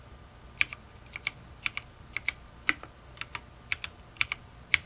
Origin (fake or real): real